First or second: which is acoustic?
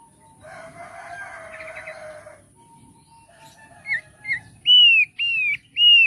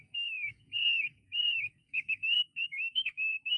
first